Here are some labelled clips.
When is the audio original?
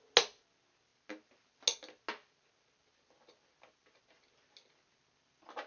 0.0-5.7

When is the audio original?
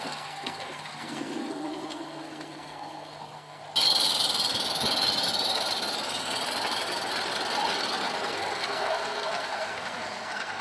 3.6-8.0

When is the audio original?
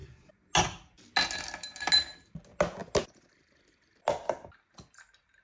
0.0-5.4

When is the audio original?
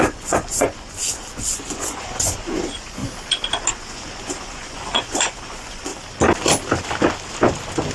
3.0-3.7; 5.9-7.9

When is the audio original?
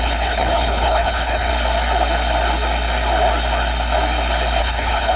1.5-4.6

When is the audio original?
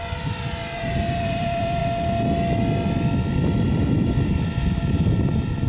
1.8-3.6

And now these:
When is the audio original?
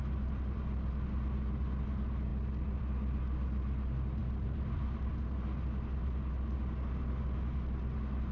0.0-4.2; 5.1-8.3